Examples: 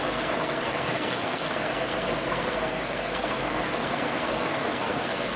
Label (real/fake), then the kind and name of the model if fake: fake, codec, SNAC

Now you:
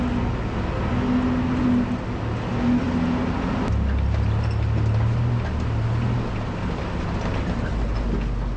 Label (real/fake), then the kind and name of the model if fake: real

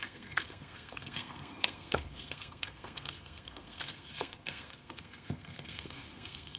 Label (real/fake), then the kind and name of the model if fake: fake, codec, SNAC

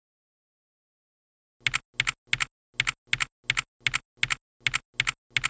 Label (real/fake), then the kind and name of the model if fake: real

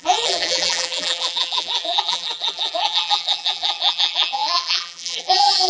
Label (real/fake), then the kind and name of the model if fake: fake, vocoder, BigVGAN v2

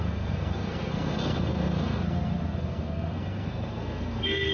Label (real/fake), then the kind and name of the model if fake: fake, codec, SNAC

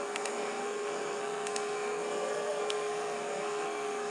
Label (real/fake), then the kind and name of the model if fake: fake, codec, SNAC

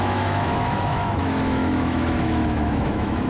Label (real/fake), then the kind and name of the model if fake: fake, autoencoder, DAC-VAE